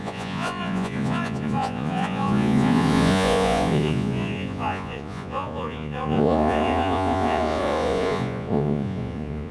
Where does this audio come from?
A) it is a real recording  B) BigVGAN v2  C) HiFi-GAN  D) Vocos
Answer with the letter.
D